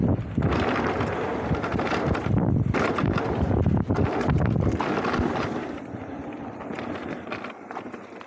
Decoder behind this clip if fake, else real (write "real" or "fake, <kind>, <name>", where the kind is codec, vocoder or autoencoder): real